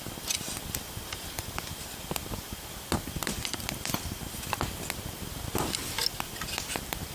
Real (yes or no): yes